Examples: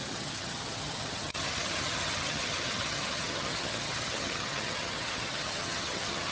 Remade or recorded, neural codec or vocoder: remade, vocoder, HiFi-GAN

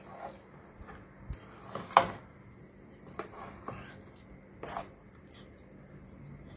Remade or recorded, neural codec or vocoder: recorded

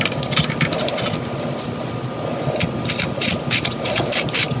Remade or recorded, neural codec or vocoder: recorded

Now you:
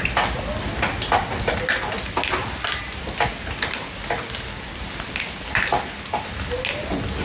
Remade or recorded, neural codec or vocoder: recorded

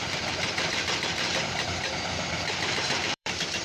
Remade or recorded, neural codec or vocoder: remade, vocoder, BigVGAN v2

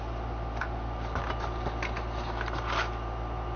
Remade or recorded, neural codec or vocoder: recorded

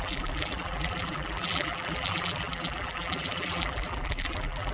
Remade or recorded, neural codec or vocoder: remade, vocoder, BigVGAN v2